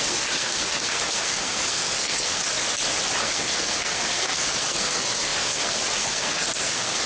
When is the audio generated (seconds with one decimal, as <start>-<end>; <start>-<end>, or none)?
0.0-2.4; 3.2-7.1